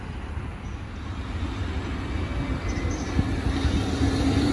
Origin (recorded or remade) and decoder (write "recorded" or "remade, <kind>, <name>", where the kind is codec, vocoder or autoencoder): recorded